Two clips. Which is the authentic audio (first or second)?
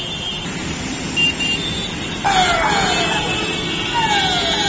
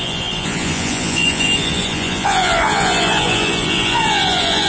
first